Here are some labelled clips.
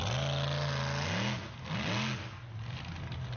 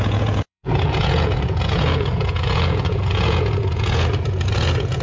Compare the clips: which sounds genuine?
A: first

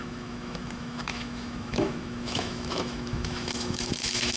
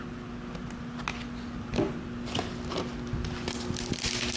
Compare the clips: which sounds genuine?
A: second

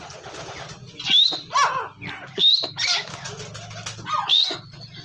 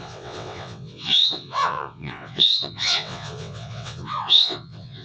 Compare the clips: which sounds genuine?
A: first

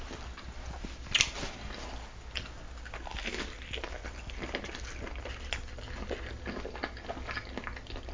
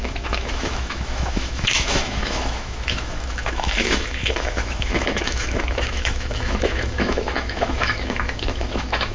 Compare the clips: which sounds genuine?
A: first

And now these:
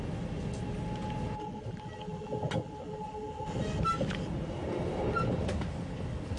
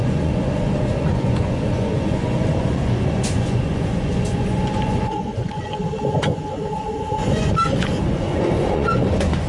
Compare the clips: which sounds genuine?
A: first